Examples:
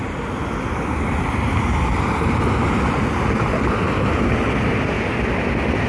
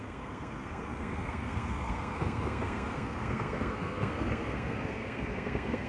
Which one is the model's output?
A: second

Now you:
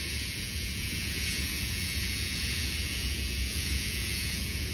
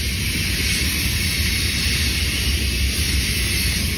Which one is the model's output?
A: first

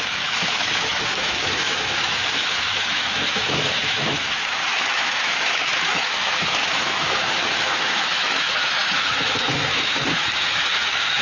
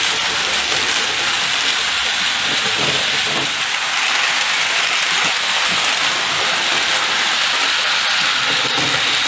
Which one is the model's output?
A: first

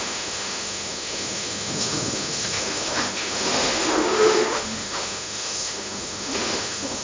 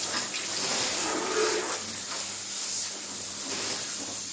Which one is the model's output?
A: first